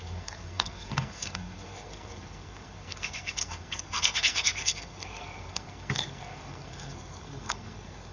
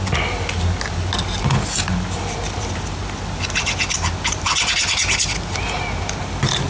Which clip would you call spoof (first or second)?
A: first